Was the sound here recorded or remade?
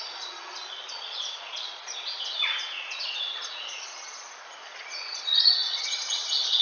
remade